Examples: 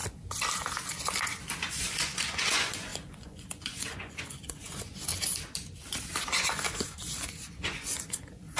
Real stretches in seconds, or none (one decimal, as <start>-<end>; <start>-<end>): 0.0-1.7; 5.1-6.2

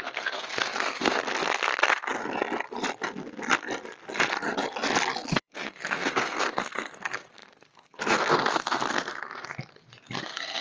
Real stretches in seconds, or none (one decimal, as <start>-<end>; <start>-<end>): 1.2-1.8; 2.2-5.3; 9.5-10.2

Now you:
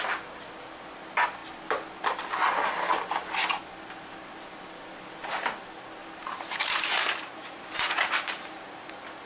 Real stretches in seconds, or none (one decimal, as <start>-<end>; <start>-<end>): 0.0-6.0; 8.9-9.3

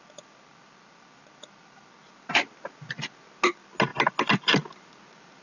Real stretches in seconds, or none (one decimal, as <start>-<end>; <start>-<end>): 0.0-5.4

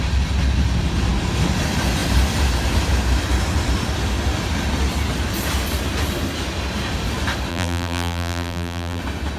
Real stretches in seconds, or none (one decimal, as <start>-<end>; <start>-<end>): 0.0-7.5; 9.0-9.4

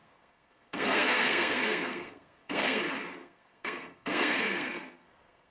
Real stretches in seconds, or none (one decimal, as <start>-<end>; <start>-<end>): 2.8-3.2

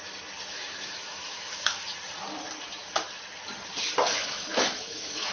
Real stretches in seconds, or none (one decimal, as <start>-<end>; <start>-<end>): 0.0-0.5; 1.9-4.1

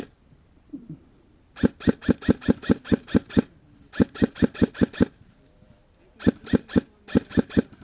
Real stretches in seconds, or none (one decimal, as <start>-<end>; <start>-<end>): 0.0-7.8